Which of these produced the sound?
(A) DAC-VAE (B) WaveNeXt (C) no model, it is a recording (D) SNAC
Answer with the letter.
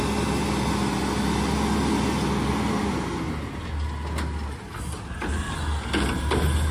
C